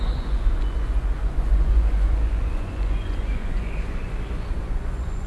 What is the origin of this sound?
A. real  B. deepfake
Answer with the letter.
B